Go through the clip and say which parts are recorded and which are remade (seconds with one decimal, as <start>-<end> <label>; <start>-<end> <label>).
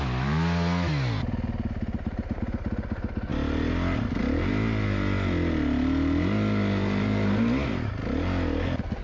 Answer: 0.0-9.0 recorded